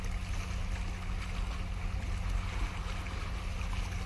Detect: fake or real real